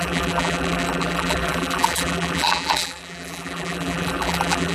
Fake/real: fake